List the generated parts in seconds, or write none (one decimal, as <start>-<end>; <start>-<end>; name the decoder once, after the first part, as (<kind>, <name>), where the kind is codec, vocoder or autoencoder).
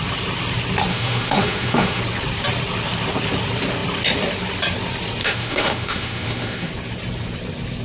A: 0.9-2.0 (autoencoder, DAC-VAE); 5.2-6.7